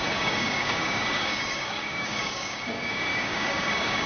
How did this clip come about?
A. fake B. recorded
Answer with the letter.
A